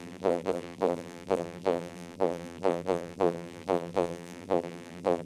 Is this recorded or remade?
remade